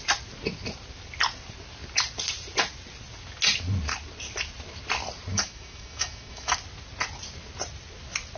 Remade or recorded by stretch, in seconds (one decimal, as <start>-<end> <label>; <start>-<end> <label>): 0.0-5.3 recorded; 5.3-6.5 remade; 6.5-8.4 recorded